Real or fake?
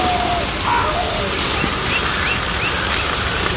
real